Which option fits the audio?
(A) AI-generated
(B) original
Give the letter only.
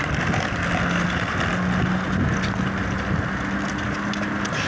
B